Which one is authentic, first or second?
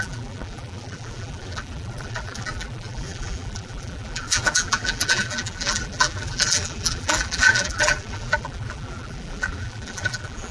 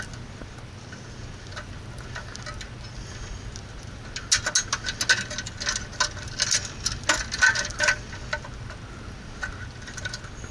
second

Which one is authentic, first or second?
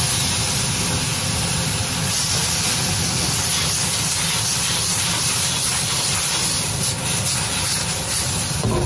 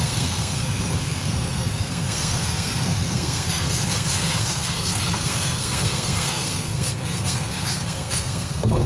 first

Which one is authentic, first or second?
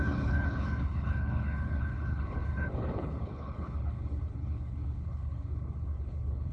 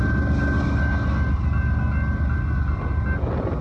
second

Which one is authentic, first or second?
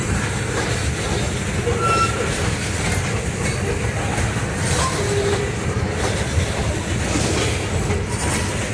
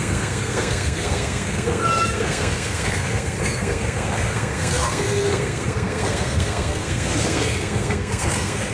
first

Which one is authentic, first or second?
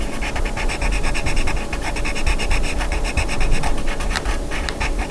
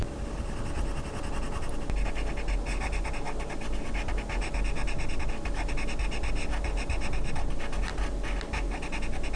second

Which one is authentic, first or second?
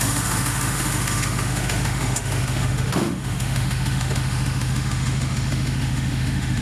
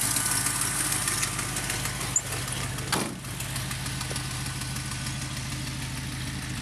second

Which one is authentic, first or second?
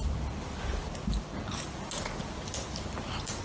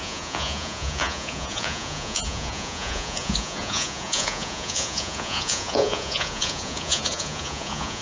first